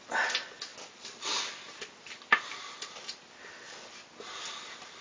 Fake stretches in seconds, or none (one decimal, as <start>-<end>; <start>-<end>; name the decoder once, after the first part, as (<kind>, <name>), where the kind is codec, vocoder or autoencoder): none